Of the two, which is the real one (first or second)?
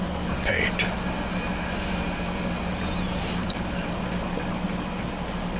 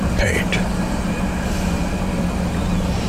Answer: first